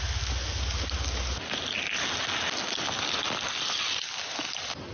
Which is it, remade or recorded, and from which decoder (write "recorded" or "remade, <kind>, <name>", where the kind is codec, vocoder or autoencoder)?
recorded